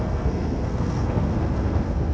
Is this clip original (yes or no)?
no